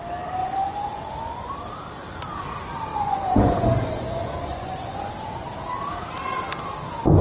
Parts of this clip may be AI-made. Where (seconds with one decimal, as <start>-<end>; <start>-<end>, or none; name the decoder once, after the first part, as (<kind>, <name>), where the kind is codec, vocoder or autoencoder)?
0.4-1.5 (vocoder, Vocos); 2.9-5.1